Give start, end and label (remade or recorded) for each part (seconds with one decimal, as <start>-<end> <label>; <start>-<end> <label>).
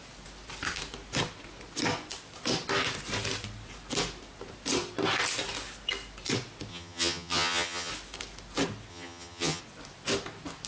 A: 0.0-6.7 recorded; 6.7-7.9 remade; 7.9-8.9 recorded; 8.9-9.6 remade; 9.6-10.7 recorded